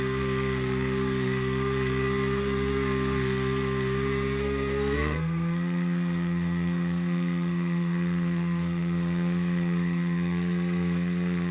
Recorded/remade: remade